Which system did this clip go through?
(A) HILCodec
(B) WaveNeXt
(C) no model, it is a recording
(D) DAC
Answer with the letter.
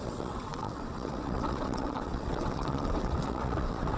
B